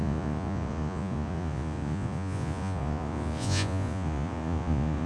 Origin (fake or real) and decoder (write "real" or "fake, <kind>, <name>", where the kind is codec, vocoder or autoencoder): fake, vocoder, Vocos